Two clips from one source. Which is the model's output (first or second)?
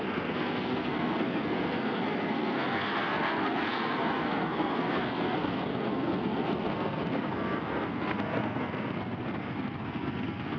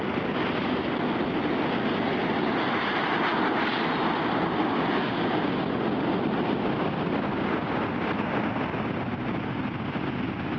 first